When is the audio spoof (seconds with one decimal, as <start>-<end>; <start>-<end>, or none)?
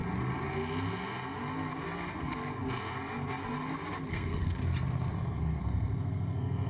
2.1-2.6; 4.1-4.6; 5.6-6.7